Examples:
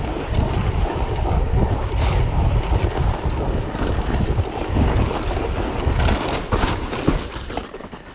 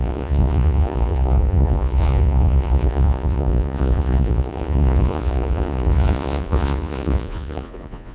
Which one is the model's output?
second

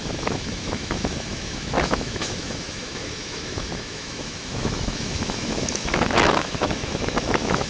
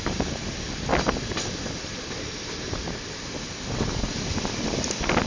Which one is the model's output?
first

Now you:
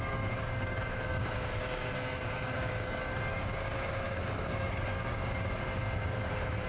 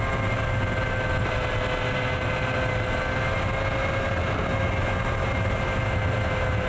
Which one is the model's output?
first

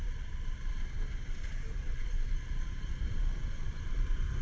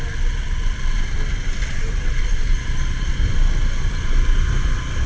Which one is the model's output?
first